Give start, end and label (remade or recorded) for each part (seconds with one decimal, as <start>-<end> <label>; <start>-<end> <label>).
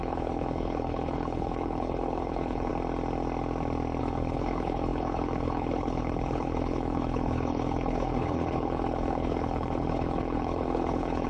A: 0.0-2.7 remade; 2.7-4.0 recorded; 4.0-11.3 remade